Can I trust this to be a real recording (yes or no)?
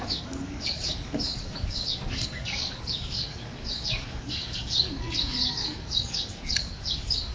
no